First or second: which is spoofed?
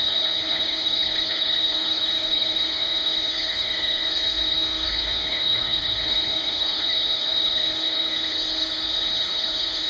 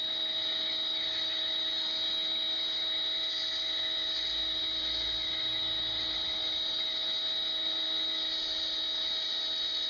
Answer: first